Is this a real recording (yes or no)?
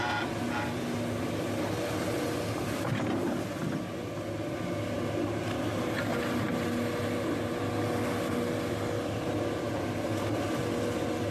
yes